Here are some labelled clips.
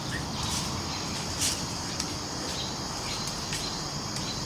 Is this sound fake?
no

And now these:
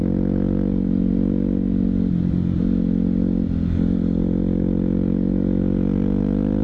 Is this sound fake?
no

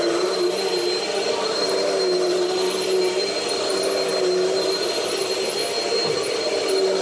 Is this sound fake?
no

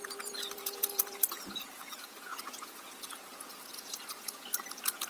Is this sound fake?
yes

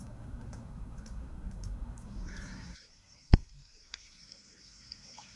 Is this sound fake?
yes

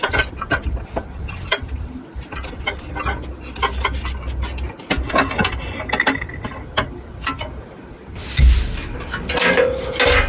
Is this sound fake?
no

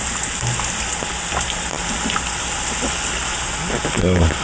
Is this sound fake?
no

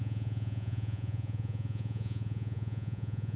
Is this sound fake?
yes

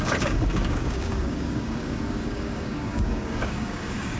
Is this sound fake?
yes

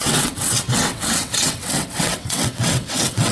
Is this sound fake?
yes